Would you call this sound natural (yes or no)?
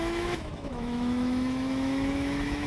no